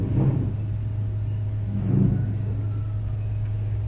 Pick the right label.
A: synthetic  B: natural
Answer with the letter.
B